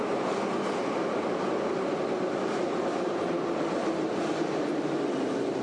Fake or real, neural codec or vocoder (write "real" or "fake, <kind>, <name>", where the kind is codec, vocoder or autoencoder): real